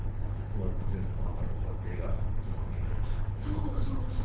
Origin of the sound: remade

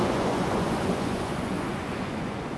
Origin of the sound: remade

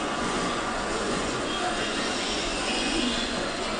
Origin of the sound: remade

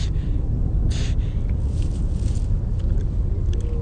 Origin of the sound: recorded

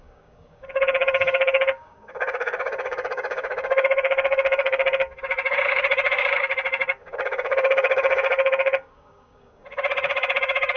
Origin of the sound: remade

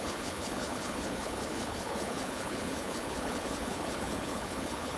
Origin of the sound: remade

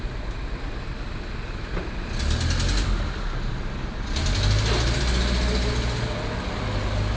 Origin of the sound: recorded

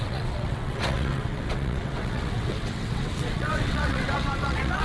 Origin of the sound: remade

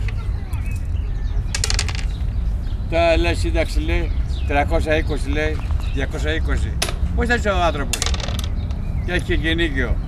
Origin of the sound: recorded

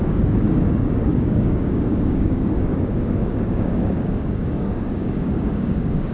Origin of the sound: remade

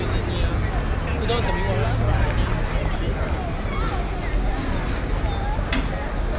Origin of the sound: recorded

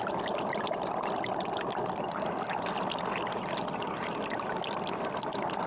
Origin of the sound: recorded